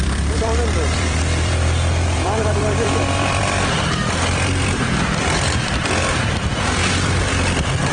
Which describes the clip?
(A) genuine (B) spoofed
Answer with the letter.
B